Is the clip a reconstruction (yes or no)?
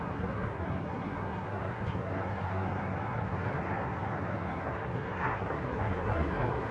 yes